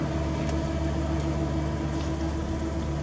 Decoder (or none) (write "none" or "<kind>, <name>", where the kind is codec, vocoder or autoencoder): none